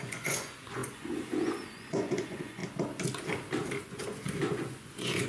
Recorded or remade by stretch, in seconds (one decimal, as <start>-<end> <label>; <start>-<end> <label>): 0.0-2.6 remade; 2.6-3.8 recorded; 3.8-5.3 remade